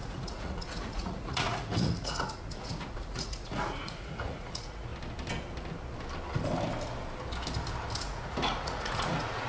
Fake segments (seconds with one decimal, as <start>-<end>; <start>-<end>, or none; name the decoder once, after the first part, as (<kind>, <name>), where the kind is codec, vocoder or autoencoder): 0.0-4.9 (vocoder, Vocos); 8.0-9.5